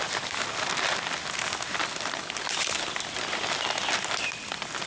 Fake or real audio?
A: real